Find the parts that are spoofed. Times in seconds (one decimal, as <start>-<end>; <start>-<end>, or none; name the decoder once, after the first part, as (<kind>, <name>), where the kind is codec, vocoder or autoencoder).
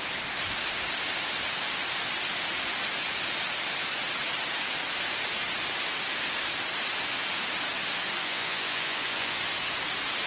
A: 8.2-9.4 (vocoder, Vocos)